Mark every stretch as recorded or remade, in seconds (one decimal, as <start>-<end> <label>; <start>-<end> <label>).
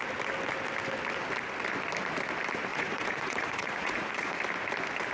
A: 0.0-2.7 recorded; 2.7-4.4 remade; 4.4-5.1 recorded